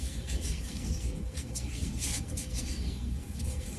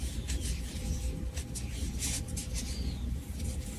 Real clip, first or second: second